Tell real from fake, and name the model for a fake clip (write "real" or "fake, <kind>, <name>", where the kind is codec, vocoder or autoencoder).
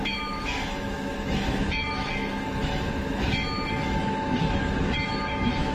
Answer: fake, autoencoder, DAC-VAE